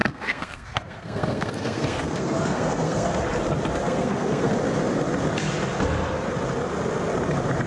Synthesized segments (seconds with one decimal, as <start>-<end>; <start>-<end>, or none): 0.0-3.2; 3.8-4.5